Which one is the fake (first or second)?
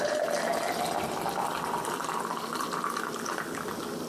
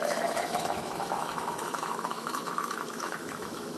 second